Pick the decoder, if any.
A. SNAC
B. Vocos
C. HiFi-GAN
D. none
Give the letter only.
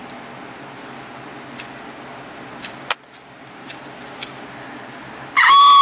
D